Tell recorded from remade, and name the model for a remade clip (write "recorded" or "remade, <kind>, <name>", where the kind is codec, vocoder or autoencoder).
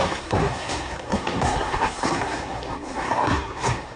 remade, codec, SNAC